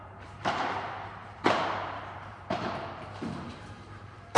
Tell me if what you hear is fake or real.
fake